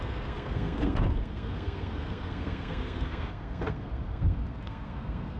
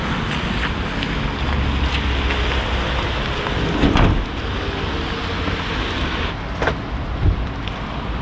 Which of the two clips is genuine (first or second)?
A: second